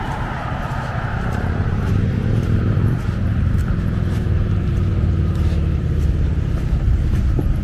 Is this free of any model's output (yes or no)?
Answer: no